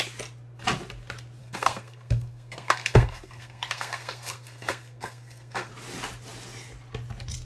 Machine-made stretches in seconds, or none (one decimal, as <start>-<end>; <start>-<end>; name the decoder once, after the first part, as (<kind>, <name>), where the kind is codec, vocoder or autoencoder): 1.4-5.7 (codec, SNAC)